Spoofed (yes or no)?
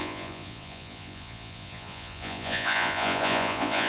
yes